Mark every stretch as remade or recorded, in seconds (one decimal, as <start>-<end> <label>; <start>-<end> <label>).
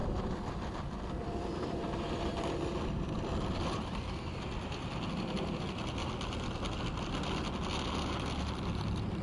0.0-6.0 remade; 6.0-8.6 recorded; 8.6-9.2 remade